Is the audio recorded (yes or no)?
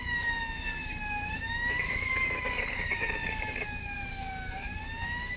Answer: no